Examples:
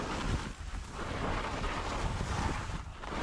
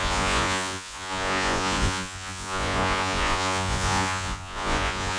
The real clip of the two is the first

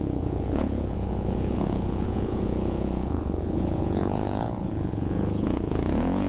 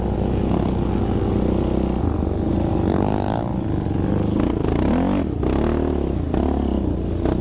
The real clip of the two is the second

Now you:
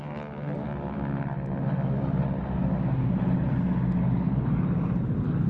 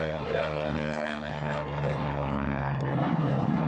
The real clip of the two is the first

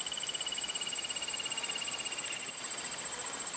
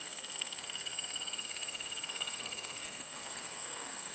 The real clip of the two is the first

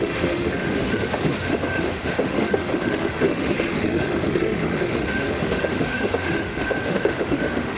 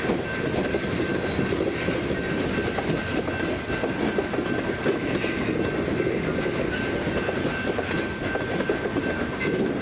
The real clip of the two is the second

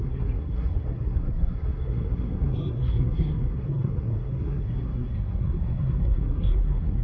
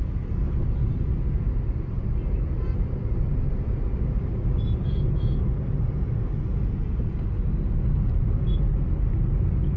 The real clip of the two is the second